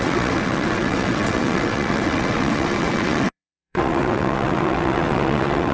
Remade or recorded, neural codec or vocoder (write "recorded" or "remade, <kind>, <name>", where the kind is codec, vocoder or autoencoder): remade, vocoder, WaveNeXt